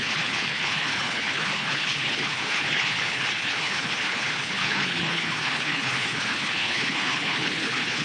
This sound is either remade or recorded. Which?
remade